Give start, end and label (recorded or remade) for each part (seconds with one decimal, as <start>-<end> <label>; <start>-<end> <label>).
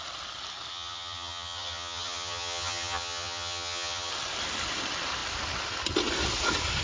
0.0-0.7 recorded; 0.7-4.1 remade; 4.1-6.8 recorded